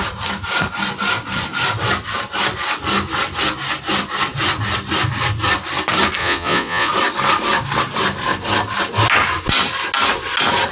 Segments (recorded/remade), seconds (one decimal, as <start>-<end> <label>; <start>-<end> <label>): 0.0-6.2 recorded; 6.2-6.9 remade; 6.9-10.7 recorded